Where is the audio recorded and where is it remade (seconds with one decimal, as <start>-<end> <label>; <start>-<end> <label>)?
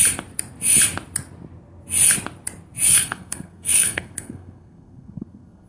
0.0-2.9 recorded; 2.9-5.7 remade